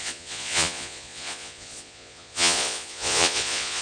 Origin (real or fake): fake